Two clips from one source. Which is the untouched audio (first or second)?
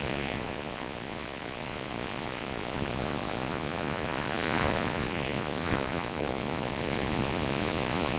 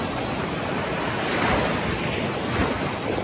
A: second